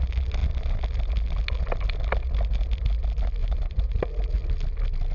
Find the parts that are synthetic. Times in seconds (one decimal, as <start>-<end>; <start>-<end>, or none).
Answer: 3.4-4.0